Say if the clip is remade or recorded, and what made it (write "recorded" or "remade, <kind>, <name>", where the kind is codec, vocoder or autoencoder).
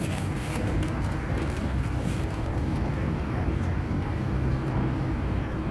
remade, codec, DAC